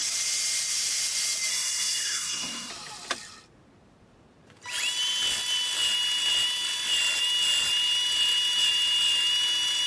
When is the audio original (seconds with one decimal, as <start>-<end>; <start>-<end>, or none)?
0.0-1.5; 2.7-9.9